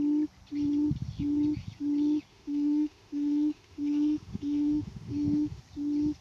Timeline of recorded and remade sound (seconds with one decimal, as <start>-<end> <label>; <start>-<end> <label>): 0.0-2.3 recorded; 2.3-5.6 remade; 5.6-6.2 recorded